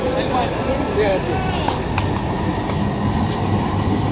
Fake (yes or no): no